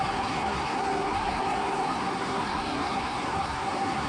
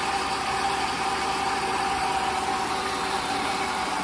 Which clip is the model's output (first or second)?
first